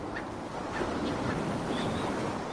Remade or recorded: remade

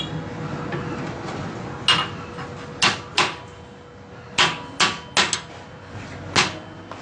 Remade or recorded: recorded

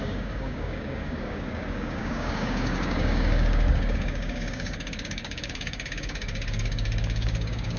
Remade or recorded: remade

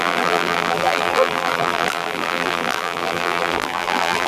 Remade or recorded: remade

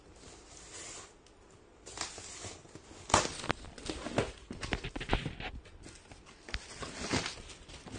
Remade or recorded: recorded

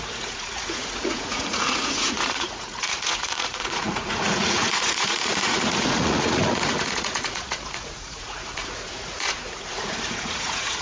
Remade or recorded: remade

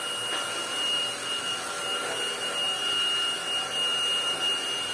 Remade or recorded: recorded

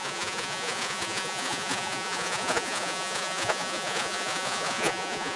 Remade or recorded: remade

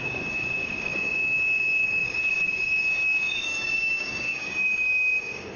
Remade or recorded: remade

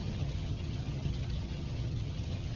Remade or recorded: remade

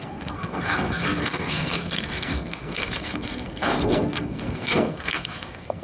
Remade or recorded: remade